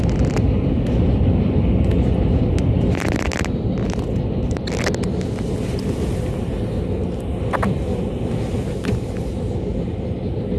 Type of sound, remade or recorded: recorded